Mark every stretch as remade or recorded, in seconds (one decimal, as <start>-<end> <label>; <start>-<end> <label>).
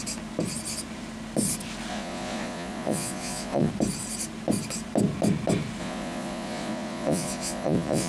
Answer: 0.0-1.9 recorded; 1.9-3.7 remade; 3.7-5.8 recorded; 5.8-8.1 remade